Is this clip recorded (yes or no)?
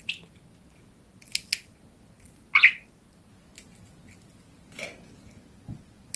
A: yes